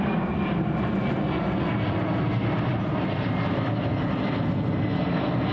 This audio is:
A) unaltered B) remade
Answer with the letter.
A